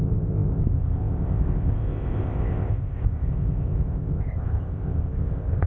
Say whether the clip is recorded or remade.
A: remade